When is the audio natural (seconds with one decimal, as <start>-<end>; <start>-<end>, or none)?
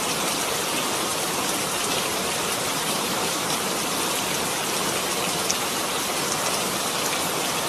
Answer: 0.0-1.1; 3.7-7.7